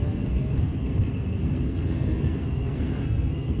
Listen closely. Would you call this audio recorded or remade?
remade